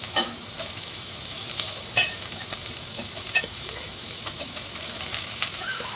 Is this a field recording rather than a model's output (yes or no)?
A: no